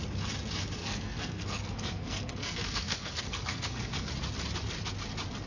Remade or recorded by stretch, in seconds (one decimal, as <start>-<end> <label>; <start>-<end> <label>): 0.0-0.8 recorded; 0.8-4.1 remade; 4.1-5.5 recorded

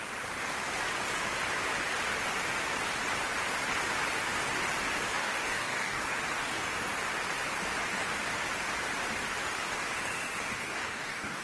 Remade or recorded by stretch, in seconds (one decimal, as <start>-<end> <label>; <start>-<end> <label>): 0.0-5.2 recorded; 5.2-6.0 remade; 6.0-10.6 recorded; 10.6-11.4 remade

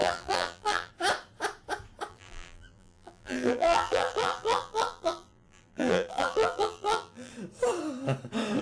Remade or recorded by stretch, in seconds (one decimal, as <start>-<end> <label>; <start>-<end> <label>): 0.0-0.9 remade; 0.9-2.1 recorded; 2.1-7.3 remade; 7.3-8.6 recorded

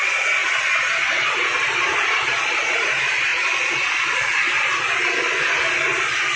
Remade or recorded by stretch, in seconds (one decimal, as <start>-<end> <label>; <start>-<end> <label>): 0.0-6.4 recorded

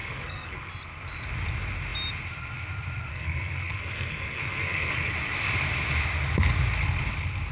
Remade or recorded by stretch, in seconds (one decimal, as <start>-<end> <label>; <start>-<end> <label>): 0.0-0.7 remade; 0.7-3.1 recorded; 3.1-5.1 remade; 5.1-7.5 recorded

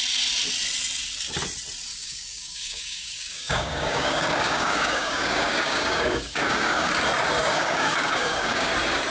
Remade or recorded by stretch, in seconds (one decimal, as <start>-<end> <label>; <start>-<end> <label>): 0.0-1.9 recorded; 1.9-6.9 remade; 6.9-7.4 recorded; 7.4-8.7 remade; 8.7-9.1 recorded